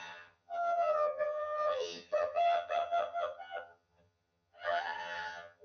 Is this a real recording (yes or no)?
no